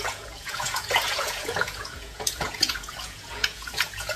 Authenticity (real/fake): fake